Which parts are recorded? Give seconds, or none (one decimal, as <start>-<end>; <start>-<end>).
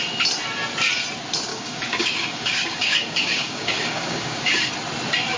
0.0-1.5; 4.7-5.4